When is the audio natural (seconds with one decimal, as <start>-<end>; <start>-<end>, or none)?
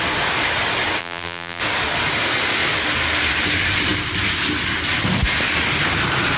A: 0.0-1.0; 1.6-6.4